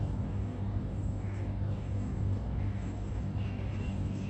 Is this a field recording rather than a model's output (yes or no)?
no